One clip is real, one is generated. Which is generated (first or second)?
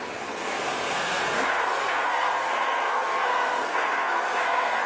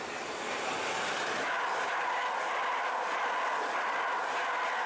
first